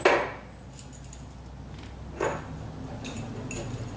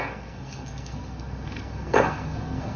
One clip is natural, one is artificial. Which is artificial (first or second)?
second